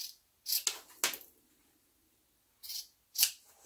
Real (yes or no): yes